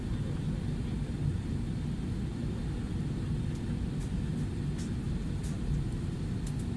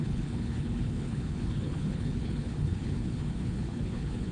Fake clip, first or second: second